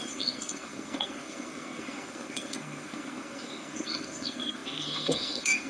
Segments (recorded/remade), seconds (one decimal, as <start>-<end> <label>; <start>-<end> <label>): 0.0-5.7 remade